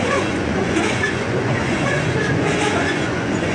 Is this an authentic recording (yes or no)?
no